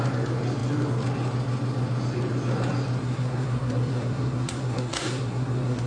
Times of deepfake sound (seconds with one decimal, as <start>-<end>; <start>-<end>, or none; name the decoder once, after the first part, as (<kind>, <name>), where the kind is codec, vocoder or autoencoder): 3.0-5.9 (codec, SNAC)